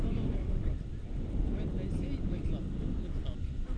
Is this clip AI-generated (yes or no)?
no